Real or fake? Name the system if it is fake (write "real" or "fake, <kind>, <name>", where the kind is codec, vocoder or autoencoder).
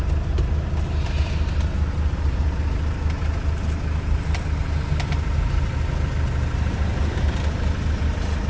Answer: real